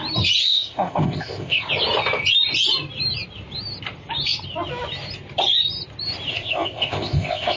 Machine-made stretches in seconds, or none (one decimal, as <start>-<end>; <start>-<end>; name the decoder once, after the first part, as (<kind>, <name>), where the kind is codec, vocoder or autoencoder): 0.4-1.7 (codec, ZipCodec); 6.3-7.6